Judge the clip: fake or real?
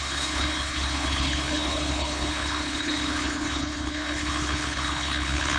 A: fake